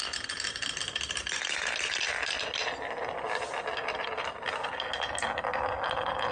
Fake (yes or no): no